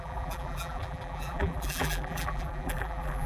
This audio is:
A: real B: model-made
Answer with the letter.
B